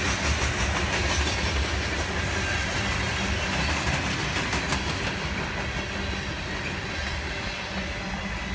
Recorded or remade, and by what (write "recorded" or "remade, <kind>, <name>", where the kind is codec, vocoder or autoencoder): recorded